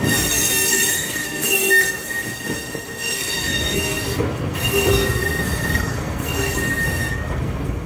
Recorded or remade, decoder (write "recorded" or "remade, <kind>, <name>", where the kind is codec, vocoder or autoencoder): remade, codec, SNAC